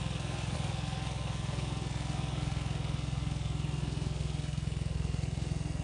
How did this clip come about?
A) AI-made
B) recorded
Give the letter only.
A